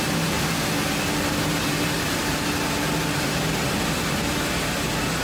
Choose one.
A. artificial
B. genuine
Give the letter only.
B